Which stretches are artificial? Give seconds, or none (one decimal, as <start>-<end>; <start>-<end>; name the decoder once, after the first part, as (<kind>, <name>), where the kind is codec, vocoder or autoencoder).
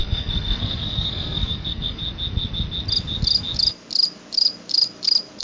0.0-2.0 (codec, SNAC)